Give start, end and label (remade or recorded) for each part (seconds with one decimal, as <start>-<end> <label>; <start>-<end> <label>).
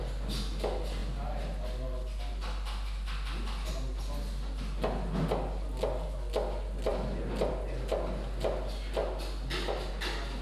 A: 0.0-10.4 recorded